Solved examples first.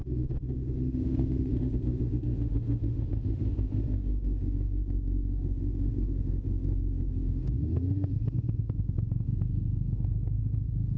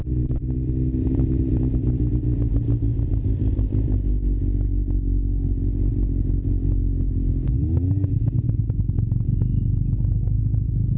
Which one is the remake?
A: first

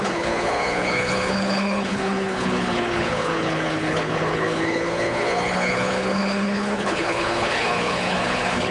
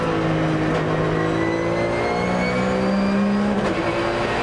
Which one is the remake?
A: first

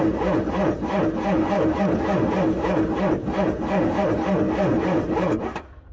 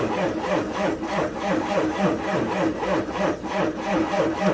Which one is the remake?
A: second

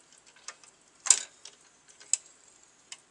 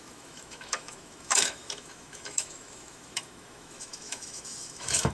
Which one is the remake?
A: second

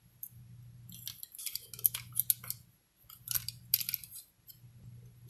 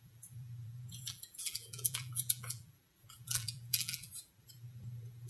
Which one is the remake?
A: second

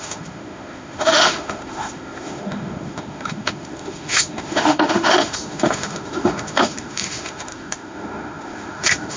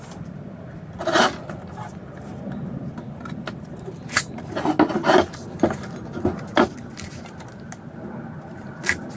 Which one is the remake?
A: first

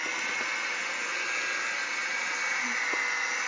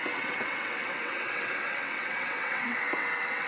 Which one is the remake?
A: second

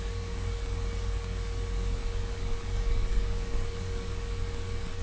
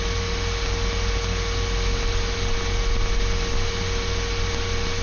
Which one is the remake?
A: first